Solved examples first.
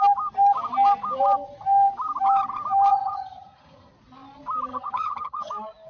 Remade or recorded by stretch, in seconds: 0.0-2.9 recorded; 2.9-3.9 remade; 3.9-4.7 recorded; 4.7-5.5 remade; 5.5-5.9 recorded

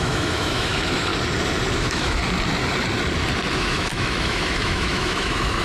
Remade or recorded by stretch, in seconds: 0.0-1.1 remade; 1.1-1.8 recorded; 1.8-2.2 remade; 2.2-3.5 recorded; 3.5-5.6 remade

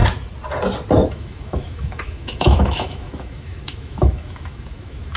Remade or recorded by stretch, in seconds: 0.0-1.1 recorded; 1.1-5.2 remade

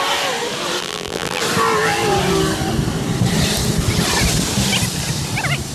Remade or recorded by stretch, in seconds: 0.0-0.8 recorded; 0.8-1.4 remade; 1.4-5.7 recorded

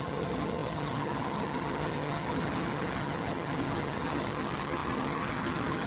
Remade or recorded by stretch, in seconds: 0.0-5.9 remade